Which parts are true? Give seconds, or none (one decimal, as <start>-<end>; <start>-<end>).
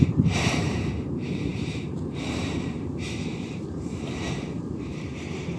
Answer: none